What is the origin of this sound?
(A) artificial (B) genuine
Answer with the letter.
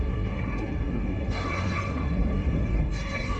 A